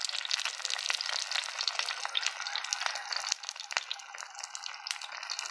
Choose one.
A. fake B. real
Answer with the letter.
B